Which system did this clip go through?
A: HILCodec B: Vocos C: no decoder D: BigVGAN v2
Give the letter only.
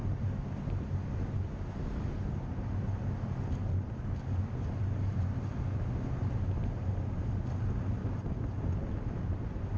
C